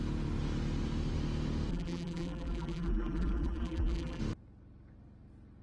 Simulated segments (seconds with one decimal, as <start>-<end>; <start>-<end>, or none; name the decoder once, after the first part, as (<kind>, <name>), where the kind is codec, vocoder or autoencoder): 1.7-4.2 (vocoder, BigVGAN v2)